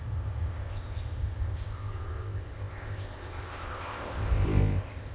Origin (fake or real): fake